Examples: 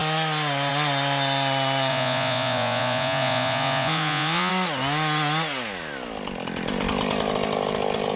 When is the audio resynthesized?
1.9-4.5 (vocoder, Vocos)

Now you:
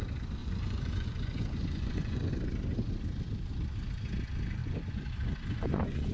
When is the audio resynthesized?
0.4-2.3 (vocoder, Vocos); 4.6-6.1